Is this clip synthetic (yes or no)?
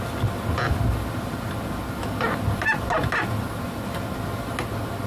no